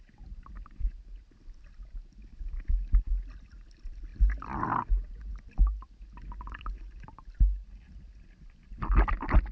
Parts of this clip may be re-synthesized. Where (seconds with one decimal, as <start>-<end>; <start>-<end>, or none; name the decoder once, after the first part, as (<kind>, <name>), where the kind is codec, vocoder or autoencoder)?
none